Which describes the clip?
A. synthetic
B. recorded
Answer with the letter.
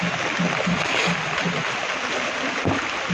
B